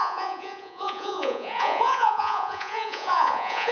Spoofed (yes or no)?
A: yes